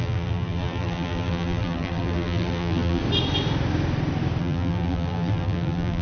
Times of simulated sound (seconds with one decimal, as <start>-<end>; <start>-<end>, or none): 0.0-3.0; 4.4-6.0